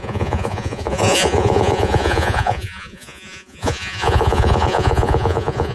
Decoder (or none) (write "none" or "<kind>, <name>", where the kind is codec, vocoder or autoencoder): vocoder, Vocos